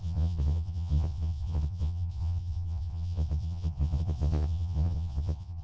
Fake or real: fake